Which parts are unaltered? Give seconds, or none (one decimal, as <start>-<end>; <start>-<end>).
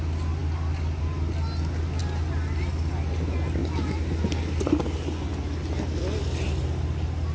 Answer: 0.0-7.3